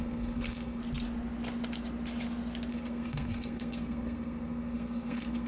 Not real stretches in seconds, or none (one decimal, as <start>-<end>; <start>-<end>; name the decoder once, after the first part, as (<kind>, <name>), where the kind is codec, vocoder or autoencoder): 0.0-0.8 (codec, SNAC); 2.7-5.5

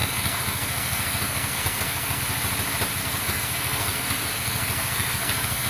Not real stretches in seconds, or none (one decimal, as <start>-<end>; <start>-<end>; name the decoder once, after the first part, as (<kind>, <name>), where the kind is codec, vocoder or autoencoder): 0.0-2.2 (codec, SNAC); 3.0-5.7

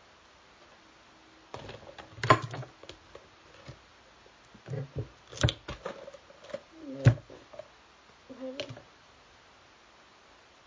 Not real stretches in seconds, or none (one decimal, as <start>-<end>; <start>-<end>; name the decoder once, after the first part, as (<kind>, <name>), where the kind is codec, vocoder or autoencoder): none

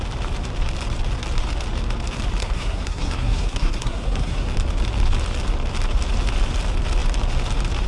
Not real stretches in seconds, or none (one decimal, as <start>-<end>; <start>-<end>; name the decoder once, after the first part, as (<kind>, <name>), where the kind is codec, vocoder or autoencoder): 2.4-4.5 (codec, SNAC)

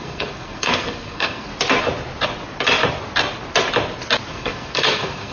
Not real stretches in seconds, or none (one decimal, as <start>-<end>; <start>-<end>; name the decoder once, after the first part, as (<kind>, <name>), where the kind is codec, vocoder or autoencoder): 0.0-1.5 (codec, SNAC); 4.3-5.3

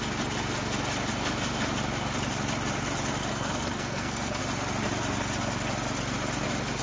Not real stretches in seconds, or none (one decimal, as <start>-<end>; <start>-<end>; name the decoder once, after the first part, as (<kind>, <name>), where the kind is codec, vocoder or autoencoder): 3.3-4.4 (codec, SNAC)